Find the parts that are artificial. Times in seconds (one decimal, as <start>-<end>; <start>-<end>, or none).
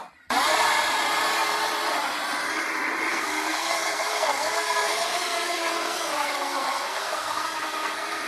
3.1-8.3